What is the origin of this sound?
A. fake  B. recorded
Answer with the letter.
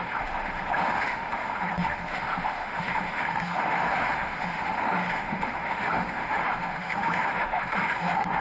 A